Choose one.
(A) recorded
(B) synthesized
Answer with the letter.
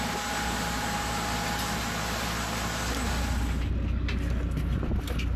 A